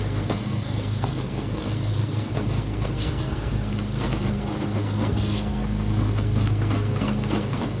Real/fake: fake